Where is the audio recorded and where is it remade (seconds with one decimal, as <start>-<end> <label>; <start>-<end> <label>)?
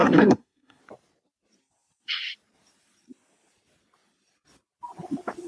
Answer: 0.0-0.8 remade; 0.8-5.5 recorded